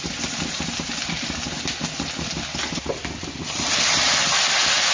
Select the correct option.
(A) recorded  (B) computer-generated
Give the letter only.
A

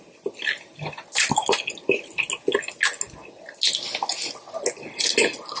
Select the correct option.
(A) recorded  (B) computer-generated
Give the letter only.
A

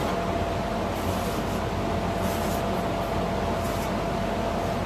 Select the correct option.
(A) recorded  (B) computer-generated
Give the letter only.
A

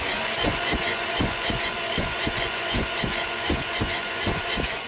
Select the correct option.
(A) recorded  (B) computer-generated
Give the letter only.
B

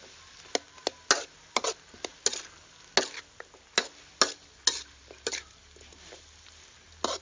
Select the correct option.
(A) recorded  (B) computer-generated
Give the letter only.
A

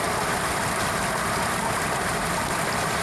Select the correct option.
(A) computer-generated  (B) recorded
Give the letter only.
B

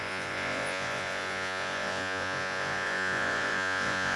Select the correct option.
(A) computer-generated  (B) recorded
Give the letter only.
A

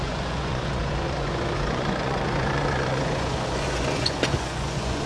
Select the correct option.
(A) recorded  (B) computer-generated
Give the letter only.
B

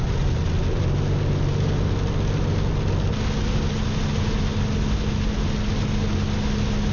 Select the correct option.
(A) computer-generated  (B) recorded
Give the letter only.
B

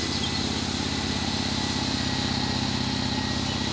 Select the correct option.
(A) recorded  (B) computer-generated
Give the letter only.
A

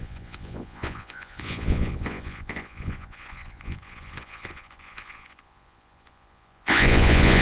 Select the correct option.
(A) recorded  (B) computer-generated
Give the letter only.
B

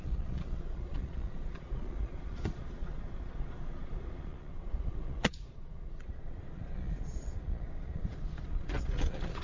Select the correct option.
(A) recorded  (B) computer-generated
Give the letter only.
B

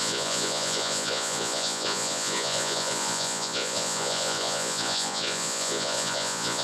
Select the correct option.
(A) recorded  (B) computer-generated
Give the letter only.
B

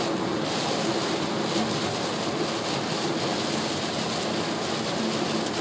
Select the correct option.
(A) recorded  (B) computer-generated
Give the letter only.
A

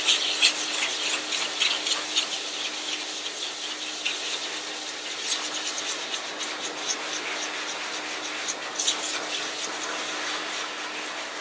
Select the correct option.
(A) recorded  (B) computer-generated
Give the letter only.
A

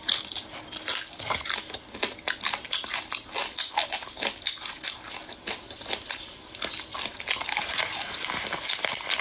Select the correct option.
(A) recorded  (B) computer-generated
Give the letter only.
A